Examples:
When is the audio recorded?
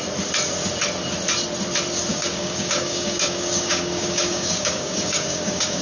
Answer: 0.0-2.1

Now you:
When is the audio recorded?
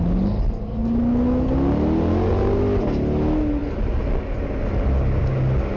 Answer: 0.0-5.8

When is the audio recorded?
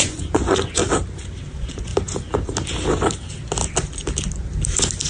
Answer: 0.8-1.5; 1.9-5.1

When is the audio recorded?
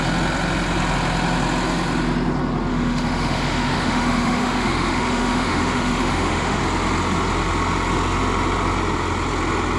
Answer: 0.0-2.7; 6.6-9.8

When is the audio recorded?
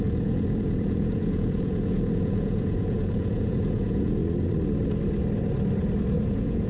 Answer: 4.2-6.3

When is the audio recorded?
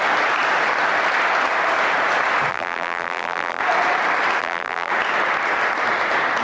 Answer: 0.0-2.5; 3.6-4.4; 4.9-6.4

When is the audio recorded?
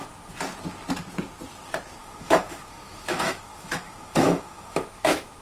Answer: 0.0-2.0